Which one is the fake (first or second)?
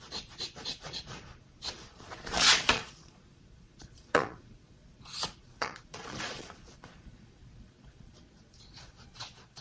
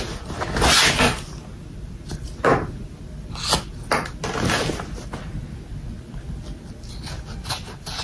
first